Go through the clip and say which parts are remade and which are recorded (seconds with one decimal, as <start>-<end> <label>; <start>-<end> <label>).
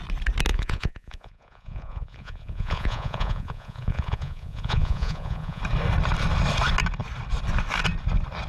0.0-0.5 recorded; 0.5-5.6 remade; 5.6-8.5 recorded